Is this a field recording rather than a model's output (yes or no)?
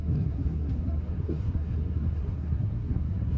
no